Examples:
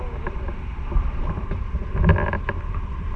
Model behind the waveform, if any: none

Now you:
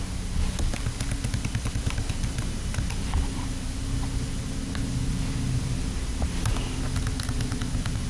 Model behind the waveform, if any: none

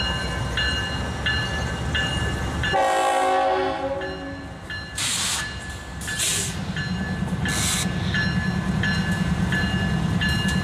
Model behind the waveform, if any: none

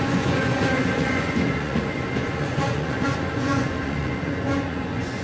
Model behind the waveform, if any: vocoder, Vocos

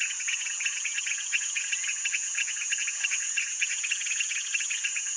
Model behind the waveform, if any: vocoder, Vocos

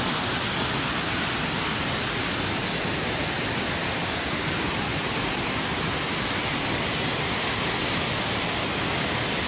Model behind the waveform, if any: none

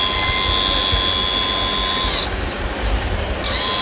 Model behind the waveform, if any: none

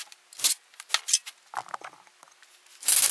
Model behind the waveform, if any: none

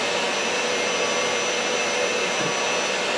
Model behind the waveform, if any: none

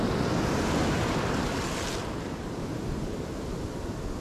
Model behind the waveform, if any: none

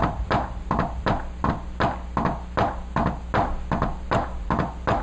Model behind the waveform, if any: none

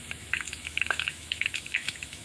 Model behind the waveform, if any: autoencoder, DAC-VAE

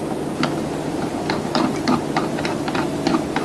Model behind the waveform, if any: none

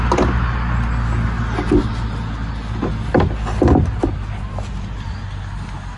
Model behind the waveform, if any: none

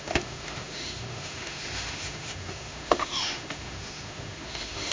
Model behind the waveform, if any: autoencoder, DAC-VAE